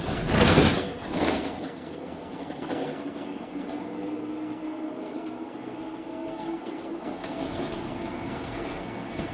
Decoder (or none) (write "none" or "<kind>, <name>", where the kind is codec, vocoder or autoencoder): codec, SNAC